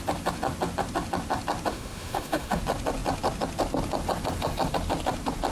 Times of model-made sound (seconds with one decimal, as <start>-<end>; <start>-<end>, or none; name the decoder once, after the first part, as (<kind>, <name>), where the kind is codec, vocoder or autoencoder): 1.7-2.6 (autoencoder, DAC-VAE)